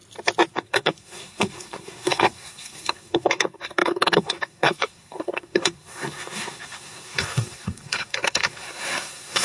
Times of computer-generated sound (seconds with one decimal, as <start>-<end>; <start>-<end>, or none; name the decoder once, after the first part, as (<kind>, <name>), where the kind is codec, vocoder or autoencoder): 0.5-9.4 (codec, SNAC)